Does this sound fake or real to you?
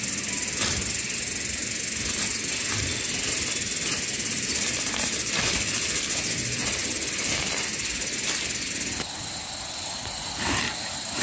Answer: real